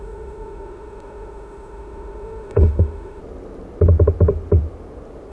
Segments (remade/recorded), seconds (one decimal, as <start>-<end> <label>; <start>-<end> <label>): 0.0-3.2 remade; 3.2-5.3 recorded